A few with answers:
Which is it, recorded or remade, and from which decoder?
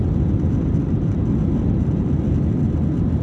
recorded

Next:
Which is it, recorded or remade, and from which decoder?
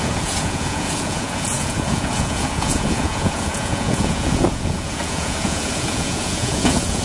remade, vocoder, Vocos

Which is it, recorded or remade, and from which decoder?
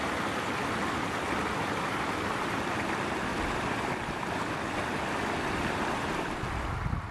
recorded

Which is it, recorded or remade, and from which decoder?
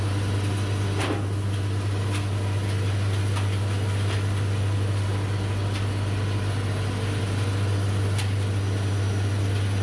recorded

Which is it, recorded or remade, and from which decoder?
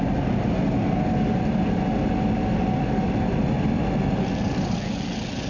recorded